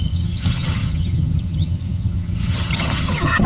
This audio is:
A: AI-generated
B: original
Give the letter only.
A